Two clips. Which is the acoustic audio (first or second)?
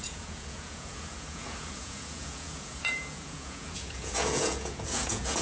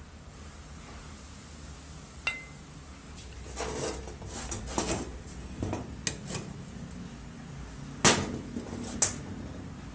second